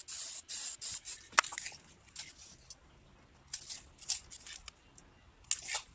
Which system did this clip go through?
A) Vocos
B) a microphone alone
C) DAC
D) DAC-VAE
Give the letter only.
B